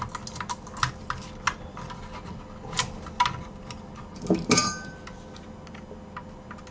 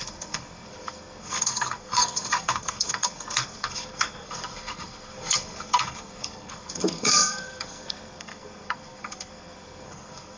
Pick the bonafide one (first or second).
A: first